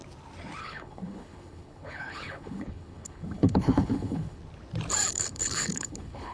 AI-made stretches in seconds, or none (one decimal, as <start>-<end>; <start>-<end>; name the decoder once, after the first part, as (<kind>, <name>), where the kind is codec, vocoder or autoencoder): 0.6-4.4 (codec, HILCodec); 5.1-6.3